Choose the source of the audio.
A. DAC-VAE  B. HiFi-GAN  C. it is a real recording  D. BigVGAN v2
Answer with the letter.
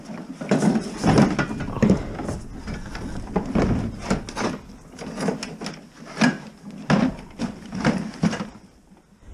C